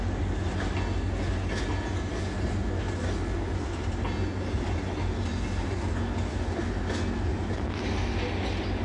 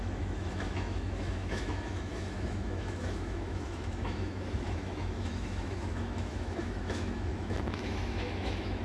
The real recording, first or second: first